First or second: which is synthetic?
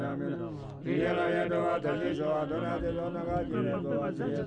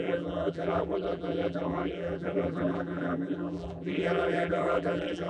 second